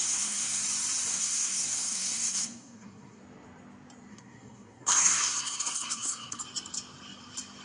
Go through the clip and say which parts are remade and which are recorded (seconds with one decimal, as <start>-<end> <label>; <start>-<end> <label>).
0.0-0.6 remade; 0.6-1.1 recorded; 1.1-3.2 remade; 3.2-4.1 recorded; 4.1-6.4 remade; 6.4-7.6 recorded